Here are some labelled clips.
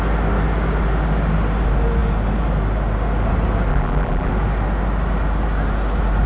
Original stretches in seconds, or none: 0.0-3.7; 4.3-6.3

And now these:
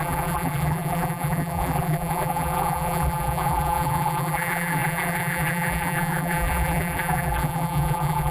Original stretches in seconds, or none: none

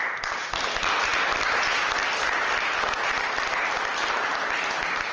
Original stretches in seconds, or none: 0.0-5.1

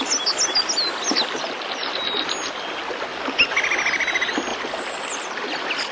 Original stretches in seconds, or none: 0.0-4.5

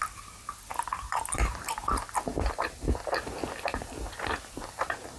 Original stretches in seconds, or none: 0.0-5.2

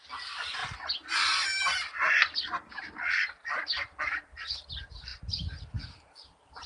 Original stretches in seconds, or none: 0.6-1.2; 5.1-6.1

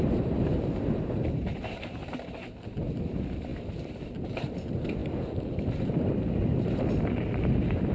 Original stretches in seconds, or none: 2.0-2.9; 3.5-4.0

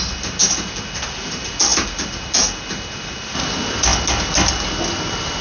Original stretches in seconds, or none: 0.0-5.4